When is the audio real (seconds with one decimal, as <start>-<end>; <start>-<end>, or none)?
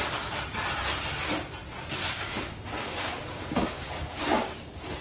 0.0-2.0